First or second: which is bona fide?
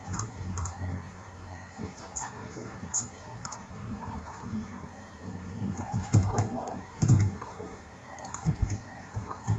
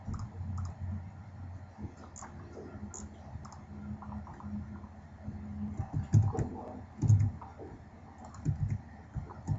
second